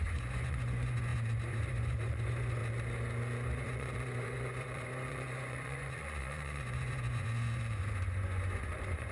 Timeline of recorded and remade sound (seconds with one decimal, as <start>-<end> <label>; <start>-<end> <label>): 0.0-2.6 remade; 2.6-3.6 recorded; 3.6-9.1 remade